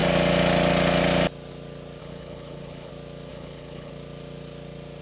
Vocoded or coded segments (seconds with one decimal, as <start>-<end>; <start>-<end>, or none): 2.0-2.9; 3.3-3.9